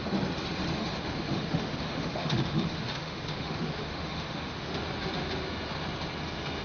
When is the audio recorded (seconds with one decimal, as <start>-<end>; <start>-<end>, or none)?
0.0-0.8; 4.8-6.6

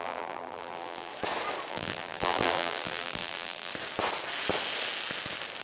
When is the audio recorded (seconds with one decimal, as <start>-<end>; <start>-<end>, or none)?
1.1-1.7; 3.7-5.6